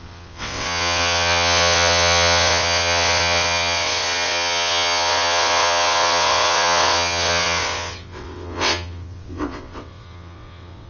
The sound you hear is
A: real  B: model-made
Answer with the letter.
B